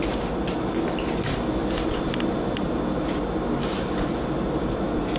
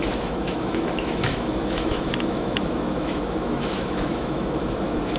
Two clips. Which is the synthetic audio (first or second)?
second